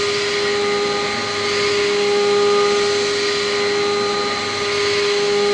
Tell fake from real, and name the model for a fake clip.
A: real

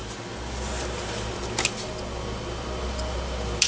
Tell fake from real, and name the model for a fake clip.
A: real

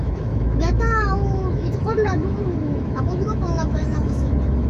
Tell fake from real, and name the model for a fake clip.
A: fake, autoencoder, DAC-VAE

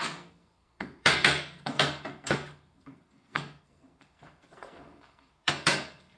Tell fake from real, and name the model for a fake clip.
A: fake, codec, SNAC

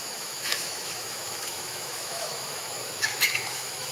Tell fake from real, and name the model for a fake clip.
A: fake, autoencoder, DAC-VAE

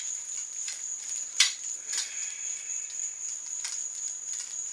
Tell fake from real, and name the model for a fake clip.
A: fake, vocoder, BigVGAN v2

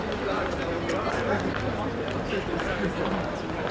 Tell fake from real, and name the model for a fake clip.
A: real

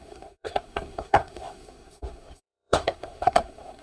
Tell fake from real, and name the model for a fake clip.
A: fake, codec, SNAC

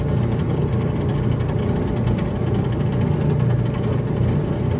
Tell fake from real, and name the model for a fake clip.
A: real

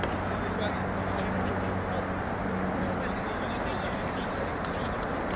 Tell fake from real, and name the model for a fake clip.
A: real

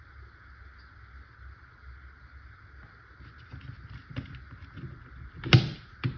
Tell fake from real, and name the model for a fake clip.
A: real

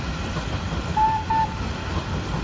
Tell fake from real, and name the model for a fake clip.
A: real